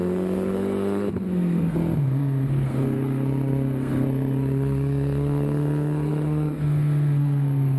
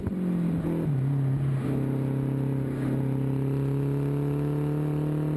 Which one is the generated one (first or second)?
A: first